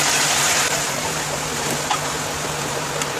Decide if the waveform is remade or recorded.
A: remade